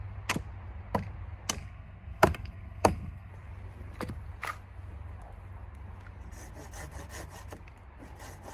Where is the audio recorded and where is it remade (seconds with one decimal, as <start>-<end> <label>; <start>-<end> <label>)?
0.0-1.6 recorded; 1.6-3.3 remade; 3.3-8.5 recorded